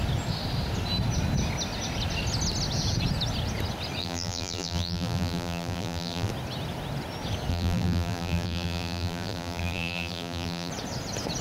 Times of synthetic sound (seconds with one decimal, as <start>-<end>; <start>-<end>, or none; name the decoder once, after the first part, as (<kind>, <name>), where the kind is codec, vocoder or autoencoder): 4.0-6.3 (vocoder, BigVGAN v2); 7.5-10.7